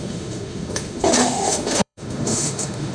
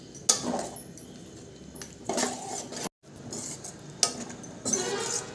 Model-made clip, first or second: first